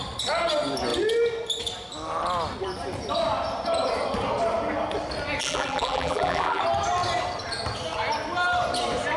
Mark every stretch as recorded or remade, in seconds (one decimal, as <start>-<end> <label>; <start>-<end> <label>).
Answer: 0.0-5.4 recorded; 5.4-6.6 remade; 6.6-9.2 recorded